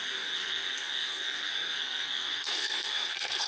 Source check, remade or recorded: remade